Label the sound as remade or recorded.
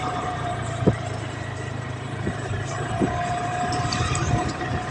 remade